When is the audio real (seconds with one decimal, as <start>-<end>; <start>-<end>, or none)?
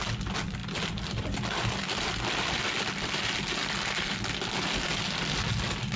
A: 0.0-6.0